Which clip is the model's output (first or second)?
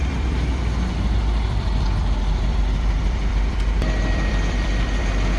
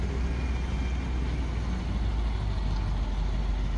first